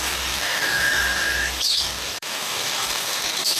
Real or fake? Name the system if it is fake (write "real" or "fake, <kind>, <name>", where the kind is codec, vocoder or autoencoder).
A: fake, codec, DAC